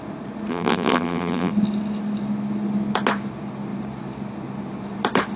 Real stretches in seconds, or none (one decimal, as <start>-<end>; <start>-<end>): 0.0-0.5; 1.5-5.4